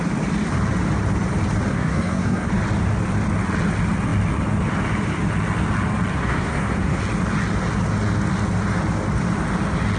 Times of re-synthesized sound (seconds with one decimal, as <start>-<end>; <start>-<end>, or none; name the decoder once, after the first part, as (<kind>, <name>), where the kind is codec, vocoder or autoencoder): 1.7-2.5 (codec, SNAC); 6.1-7.0